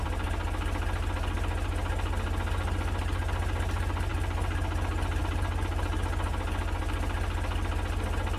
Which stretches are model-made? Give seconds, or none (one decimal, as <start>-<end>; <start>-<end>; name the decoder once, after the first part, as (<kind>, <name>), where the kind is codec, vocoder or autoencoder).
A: none

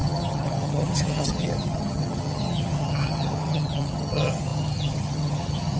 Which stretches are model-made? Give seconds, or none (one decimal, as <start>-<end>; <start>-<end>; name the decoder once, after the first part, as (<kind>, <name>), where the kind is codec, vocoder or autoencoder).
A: 0.0-5.8 (vocoder, HiFi-GAN)